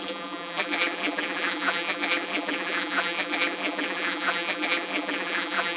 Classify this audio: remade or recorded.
remade